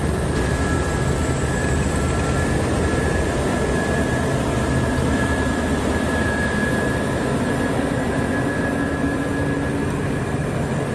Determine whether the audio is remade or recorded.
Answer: remade